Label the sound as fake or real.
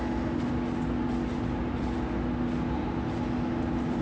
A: real